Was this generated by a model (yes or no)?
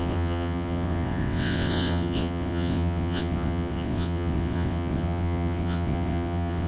yes